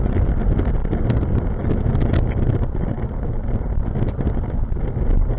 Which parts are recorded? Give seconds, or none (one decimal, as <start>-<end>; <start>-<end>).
0.0-5.4